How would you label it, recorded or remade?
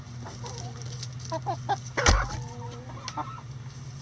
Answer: recorded